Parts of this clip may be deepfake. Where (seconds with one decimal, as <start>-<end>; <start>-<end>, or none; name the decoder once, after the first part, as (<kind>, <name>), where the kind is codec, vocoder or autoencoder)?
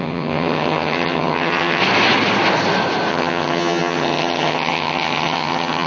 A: 0.0-1.8 (vocoder, HiFi-GAN); 3.1-5.9